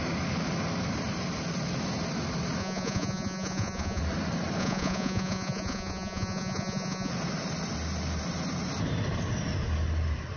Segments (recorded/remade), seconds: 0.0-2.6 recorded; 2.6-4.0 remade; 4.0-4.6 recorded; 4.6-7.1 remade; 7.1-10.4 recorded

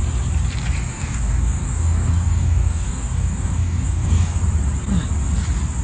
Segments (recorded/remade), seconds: 0.0-0.9 recorded; 0.9-4.4 remade; 4.4-5.8 recorded

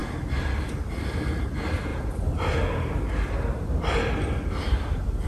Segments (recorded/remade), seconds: 0.0-5.3 recorded